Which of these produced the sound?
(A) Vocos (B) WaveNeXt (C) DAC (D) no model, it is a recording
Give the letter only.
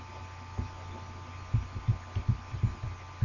D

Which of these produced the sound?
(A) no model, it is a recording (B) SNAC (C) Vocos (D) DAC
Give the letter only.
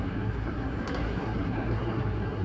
B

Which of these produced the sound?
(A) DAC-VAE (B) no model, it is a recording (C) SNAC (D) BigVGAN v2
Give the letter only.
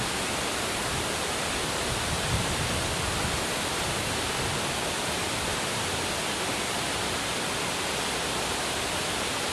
B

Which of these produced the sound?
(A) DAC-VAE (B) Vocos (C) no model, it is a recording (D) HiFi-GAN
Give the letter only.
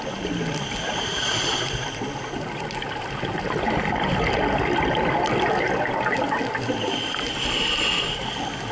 C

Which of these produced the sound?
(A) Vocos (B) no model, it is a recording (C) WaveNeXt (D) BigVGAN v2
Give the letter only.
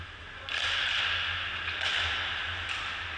B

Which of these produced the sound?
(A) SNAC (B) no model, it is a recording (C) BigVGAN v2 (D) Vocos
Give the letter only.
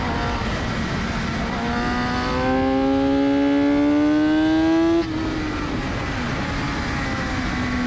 B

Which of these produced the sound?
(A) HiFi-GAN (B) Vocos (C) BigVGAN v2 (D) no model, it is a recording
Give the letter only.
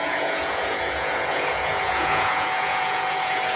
B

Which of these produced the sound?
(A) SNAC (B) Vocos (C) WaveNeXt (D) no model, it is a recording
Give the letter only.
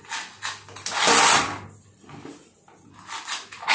D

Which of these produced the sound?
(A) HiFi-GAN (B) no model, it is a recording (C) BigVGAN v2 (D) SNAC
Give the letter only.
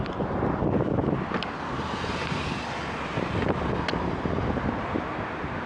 B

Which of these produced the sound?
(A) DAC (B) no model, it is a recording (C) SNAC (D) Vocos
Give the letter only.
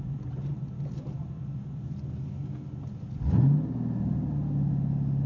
B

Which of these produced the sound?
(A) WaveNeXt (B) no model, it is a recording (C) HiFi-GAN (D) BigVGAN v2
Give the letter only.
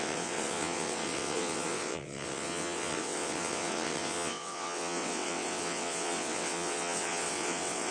A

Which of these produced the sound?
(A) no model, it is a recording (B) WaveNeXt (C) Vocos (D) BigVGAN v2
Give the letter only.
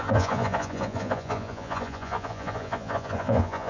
C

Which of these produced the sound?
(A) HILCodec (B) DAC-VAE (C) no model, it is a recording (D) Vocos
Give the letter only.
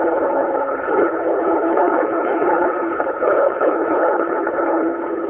A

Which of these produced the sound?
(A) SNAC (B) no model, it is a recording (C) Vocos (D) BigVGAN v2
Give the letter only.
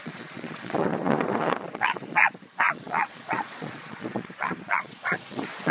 C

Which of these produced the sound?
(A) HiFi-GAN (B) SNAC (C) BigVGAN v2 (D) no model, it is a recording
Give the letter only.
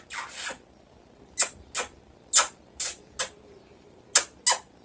D